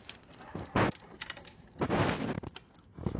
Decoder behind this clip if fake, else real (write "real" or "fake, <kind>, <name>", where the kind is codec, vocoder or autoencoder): real